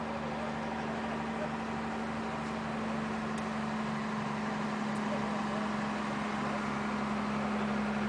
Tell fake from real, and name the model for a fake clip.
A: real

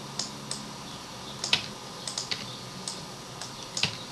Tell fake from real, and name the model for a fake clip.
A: real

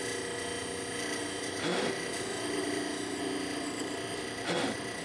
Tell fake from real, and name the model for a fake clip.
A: real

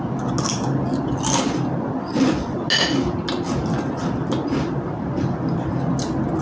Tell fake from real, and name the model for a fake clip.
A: real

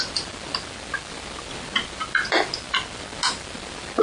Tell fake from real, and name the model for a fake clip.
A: real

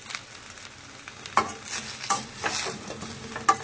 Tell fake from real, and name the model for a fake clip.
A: real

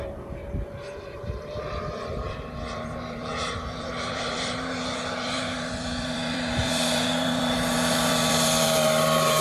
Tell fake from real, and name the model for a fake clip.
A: fake, vocoder, BigVGAN v2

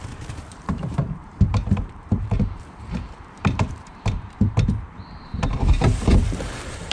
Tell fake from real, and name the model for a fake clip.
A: fake, vocoder, BigVGAN v2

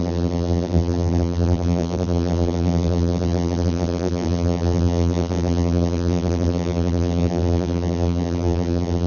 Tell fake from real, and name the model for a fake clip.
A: fake, vocoder, BigVGAN v2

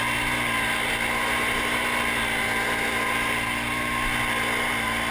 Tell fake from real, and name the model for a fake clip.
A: real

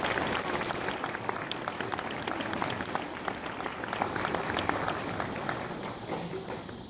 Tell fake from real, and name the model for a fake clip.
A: real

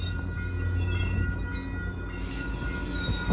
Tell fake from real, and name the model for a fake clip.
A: real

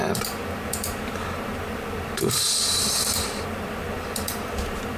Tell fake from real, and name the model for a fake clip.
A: fake, vocoder, BigVGAN v2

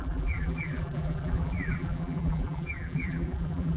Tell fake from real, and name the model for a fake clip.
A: fake, vocoder, BigVGAN v2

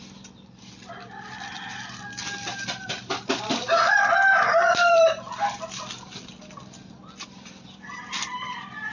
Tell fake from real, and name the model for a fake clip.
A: fake, vocoder, BigVGAN v2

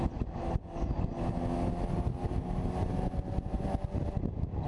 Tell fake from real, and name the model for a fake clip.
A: real